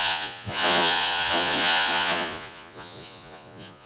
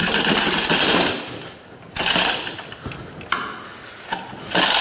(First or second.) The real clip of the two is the second